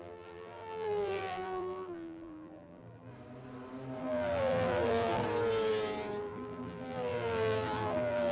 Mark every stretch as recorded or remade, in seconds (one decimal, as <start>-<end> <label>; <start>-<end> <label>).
0.0-3.1 remade; 3.1-4.0 recorded; 4.0-5.2 remade; 5.2-6.2 recorded; 6.2-8.3 remade